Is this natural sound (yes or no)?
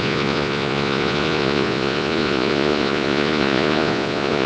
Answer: no